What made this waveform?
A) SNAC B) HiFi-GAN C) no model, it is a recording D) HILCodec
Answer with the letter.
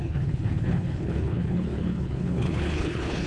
D